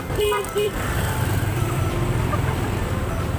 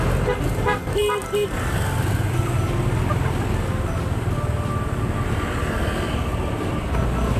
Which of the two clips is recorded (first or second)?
second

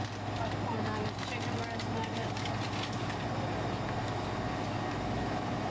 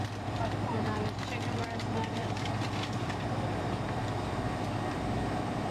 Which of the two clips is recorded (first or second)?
first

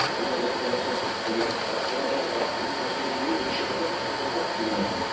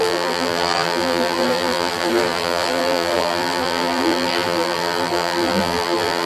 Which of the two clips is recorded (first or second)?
first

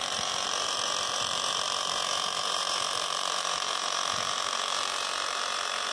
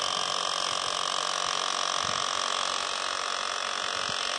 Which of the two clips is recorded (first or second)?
second